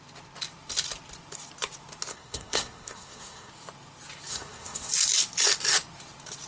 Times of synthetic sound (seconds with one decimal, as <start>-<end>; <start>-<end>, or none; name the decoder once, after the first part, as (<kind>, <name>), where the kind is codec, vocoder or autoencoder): 2.1-3.5 (codec, SNAC); 4.3-4.9